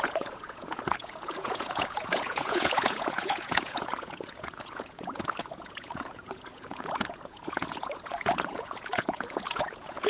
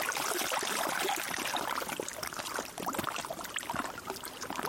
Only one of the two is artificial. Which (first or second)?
first